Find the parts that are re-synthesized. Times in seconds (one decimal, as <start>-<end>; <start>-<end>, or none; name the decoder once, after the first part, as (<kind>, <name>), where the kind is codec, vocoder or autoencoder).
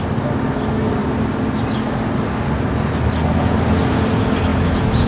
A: 4.5-5.1 (vocoder, Vocos)